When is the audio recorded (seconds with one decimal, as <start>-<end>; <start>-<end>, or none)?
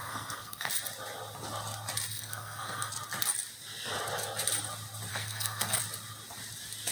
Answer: 0.7-2.1; 2.9-5.1; 5.8-6.9